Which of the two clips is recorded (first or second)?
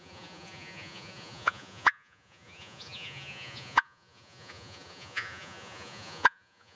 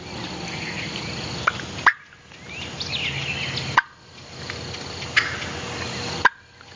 second